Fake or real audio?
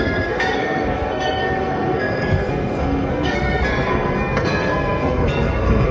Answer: fake